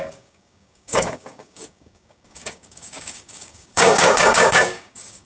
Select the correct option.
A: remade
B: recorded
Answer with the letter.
A